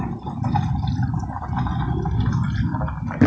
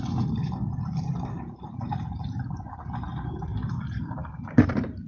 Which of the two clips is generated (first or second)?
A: second